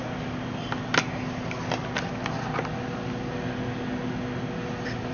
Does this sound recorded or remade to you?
recorded